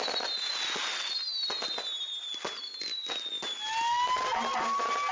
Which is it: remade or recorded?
recorded